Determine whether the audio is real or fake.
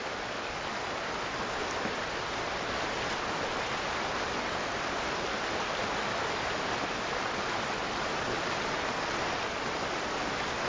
real